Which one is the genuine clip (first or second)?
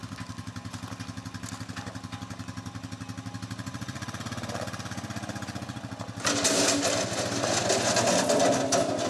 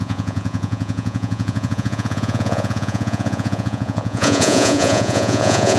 first